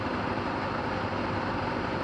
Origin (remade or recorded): remade